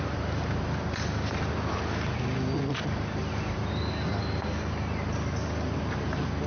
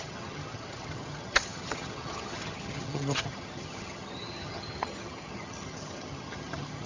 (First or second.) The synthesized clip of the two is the second